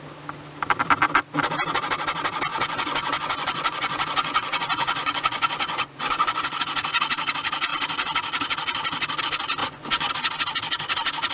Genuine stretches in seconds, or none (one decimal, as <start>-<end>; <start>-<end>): 0.0-2.5; 6.6-9.6; 10.1-11.3